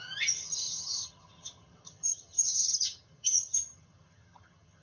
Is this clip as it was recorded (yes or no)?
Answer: no